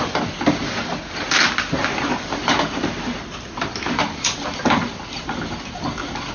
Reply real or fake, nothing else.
real